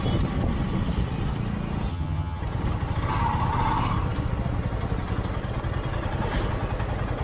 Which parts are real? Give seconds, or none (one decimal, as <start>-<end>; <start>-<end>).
0.0-1.9; 2.4-7.2